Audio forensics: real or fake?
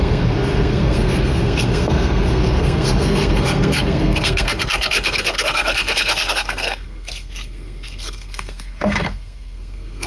fake